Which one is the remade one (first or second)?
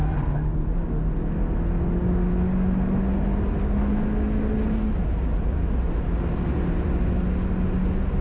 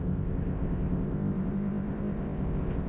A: second